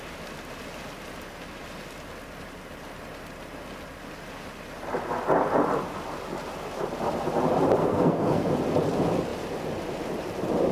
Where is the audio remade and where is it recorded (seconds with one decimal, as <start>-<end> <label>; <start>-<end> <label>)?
0.0-7.8 recorded; 7.8-8.5 remade; 8.5-10.7 recorded